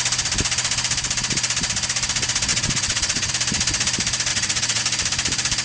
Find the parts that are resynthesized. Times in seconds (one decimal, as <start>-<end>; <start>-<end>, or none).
2.5-3.3; 4.3-4.8